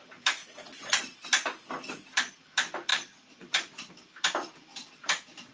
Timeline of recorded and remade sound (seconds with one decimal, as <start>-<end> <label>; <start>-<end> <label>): 0.0-0.4 recorded; 0.4-1.0 remade; 1.0-2.9 recorded; 2.9-3.9 remade; 3.9-5.5 recorded